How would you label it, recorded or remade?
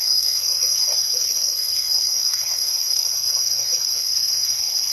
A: remade